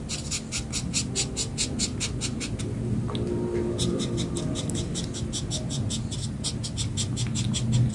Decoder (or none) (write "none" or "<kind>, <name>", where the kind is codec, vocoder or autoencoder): none